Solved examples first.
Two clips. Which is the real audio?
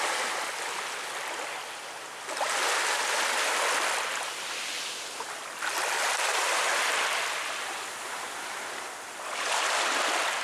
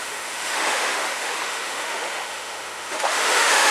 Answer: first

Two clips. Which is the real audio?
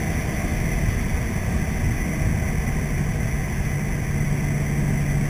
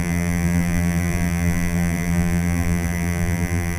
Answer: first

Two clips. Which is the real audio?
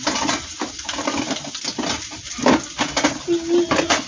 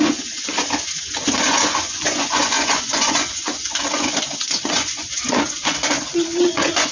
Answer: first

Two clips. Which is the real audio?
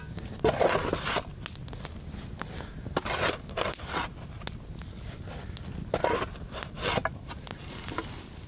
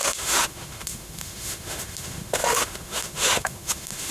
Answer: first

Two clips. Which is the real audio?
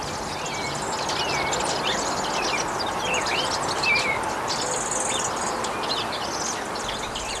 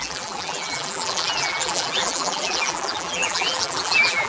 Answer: first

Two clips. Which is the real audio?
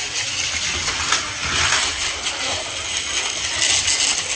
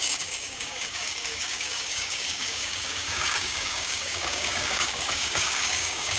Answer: first